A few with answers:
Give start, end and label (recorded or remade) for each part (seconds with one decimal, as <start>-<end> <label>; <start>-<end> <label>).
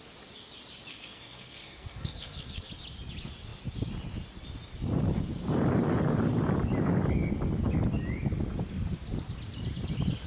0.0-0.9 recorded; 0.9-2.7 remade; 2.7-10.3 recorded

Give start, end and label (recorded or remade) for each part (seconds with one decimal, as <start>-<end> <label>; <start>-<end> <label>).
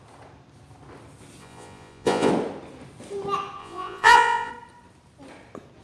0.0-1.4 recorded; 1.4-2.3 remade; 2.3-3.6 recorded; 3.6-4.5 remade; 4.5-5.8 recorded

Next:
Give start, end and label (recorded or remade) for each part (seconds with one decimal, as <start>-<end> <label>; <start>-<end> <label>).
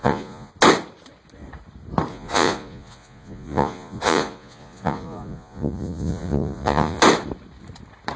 0.0-0.5 remade; 0.5-2.1 recorded; 2.1-7.0 remade; 7.0-8.2 recorded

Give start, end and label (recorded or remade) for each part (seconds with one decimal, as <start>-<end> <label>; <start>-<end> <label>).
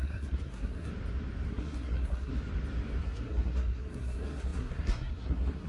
0.0-0.9 remade; 0.9-1.5 recorded; 1.5-2.3 remade; 2.3-3.0 recorded; 3.0-5.7 remade